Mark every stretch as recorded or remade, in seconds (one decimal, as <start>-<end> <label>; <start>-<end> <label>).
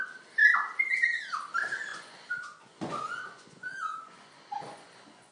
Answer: 0.0-1.9 recorded; 1.9-5.3 remade